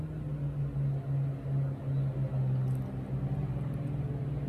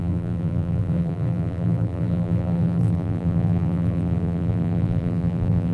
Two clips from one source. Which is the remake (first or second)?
second